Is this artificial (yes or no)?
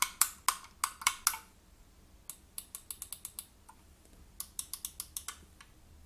no